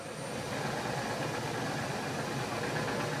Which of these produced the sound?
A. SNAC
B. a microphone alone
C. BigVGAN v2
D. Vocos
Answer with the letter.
B